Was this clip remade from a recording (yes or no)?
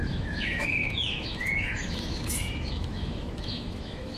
yes